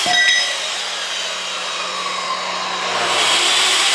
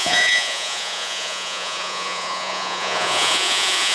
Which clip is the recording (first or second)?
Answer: first